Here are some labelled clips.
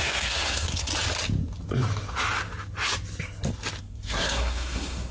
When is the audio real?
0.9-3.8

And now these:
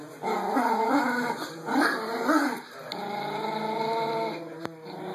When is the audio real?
0.0-5.1